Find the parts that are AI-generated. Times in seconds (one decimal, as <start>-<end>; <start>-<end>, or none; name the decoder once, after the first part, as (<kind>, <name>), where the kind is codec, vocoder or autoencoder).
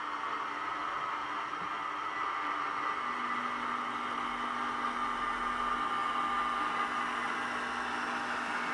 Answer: none